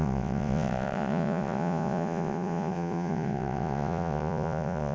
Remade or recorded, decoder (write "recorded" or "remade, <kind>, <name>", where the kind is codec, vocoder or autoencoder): remade, vocoder, Vocos